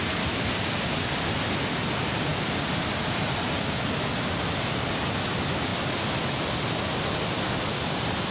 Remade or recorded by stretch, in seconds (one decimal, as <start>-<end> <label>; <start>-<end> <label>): 0.0-8.3 recorded